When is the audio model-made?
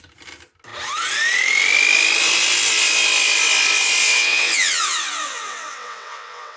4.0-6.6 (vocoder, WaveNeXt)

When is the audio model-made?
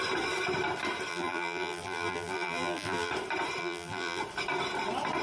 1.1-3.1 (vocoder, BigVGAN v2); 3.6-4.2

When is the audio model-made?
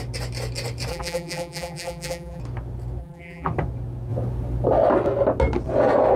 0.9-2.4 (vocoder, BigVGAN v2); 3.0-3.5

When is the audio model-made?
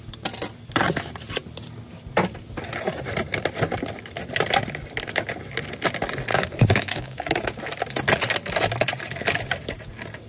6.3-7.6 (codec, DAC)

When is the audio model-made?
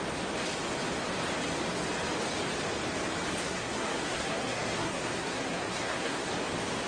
3.4-6.3 (codec, SNAC)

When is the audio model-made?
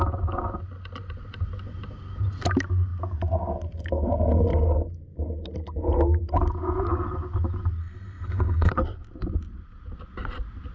7.8-8.7 (codec, SNAC)